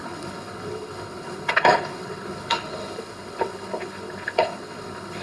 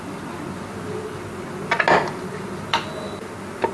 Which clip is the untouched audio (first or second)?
second